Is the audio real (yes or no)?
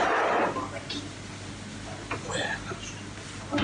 yes